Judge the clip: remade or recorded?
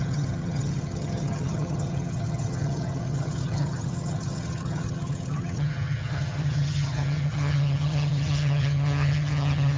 remade